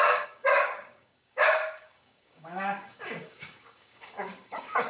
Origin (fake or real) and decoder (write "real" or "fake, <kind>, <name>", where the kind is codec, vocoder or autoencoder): fake, codec, DAC